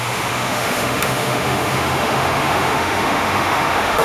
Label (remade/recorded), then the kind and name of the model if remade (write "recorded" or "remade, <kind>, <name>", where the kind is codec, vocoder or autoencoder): remade, autoencoder, DAC-VAE